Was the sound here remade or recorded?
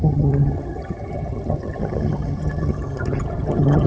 remade